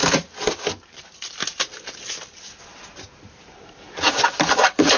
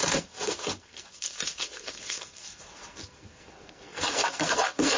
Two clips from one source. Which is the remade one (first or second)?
second